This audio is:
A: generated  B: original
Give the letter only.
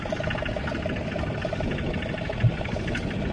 B